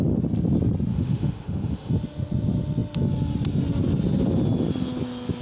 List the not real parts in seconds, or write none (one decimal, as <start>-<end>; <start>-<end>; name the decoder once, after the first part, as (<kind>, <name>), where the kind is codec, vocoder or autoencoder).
0.9-1.9 (autoencoder, DAC-VAE)